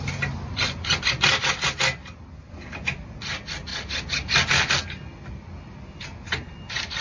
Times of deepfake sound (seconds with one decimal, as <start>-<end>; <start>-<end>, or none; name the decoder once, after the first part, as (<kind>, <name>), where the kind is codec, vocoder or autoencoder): none